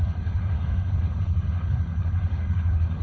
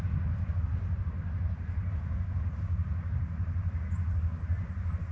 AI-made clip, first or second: first